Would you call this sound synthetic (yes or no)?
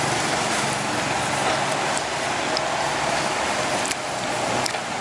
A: no